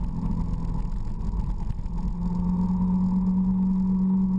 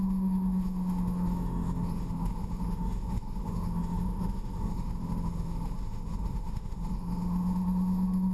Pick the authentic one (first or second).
first